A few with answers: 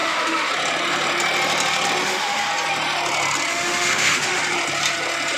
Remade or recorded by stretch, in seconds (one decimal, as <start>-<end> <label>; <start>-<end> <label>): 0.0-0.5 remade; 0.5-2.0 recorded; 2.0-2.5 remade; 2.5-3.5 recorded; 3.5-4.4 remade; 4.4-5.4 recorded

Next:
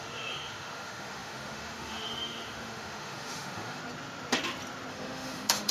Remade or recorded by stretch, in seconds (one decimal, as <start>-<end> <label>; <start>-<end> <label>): 0.0-3.8 remade; 3.8-4.9 recorded; 4.9-5.7 remade

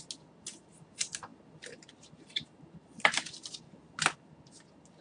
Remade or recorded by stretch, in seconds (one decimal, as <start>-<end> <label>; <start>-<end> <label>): 0.0-5.0 recorded

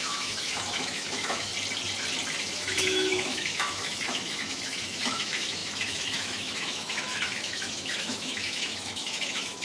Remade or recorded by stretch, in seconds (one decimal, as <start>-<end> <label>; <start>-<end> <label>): 0.0-1.5 remade; 1.5-2.4 recorded; 2.4-9.6 remade

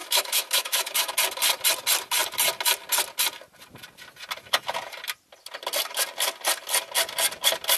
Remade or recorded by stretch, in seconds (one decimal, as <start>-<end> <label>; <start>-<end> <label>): 0.0-1.1 remade; 1.1-7.8 recorded